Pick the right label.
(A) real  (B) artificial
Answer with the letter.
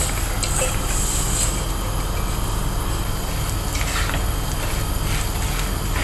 A